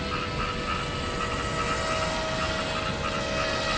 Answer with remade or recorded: recorded